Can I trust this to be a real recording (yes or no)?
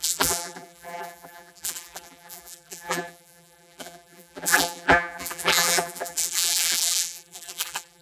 no